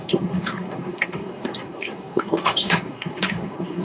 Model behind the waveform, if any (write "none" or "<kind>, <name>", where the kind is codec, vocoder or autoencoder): codec, SNAC